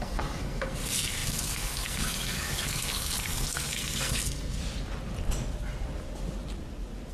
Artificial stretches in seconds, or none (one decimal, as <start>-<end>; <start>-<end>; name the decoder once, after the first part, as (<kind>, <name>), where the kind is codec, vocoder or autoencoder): 0.0-4.6 (codec, SNAC)